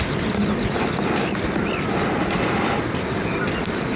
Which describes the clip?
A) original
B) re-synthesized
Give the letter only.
A